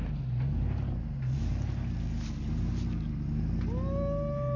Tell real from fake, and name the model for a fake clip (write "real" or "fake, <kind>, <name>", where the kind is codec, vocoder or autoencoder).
real